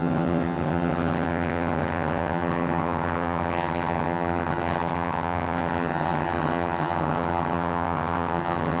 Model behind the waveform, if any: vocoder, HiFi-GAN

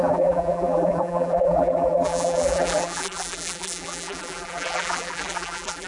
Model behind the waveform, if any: vocoder, BigVGAN v2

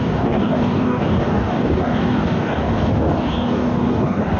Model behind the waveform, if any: codec, DAC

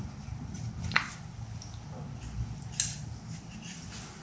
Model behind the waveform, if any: none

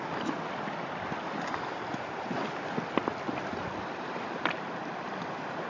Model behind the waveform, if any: none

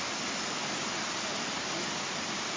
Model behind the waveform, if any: none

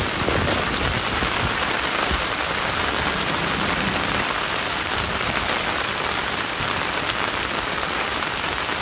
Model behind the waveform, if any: vocoder, BigVGAN v2